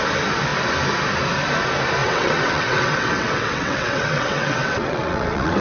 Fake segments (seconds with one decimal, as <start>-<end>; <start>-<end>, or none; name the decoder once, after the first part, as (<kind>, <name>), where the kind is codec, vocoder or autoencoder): 2.0-5.6 (vocoder, WaveNeXt)